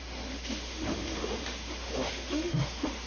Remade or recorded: remade